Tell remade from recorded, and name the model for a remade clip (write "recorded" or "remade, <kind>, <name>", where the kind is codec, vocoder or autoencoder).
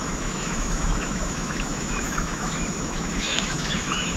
remade, autoencoder, DAC-VAE